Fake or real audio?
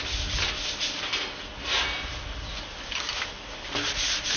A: real